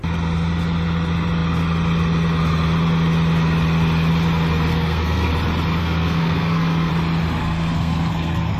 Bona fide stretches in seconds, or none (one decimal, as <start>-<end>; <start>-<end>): 0.0-4.7; 5.3-5.8; 6.9-7.4

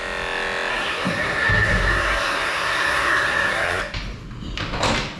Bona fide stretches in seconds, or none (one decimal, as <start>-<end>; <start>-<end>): 0.0-0.7; 3.8-5.2

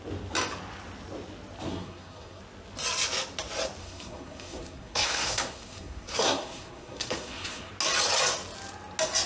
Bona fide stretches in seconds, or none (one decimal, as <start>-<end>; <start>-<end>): 0.0-1.7; 2.4-3.8; 7.7-9.3

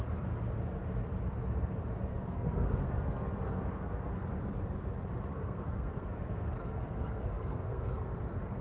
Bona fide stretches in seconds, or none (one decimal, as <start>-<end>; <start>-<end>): 0.0-2.1; 4.1-5.3; 8.1-8.6

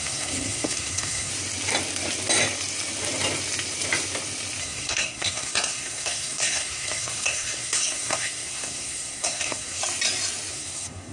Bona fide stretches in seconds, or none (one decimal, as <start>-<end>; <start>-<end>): 1.3-4.6; 9.8-10.5

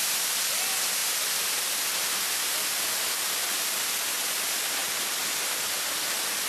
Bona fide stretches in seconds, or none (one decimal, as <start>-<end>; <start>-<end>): 0.0-6.5